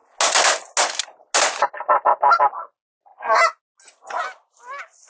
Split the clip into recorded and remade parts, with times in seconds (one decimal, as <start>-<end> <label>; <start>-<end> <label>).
0.0-5.1 recorded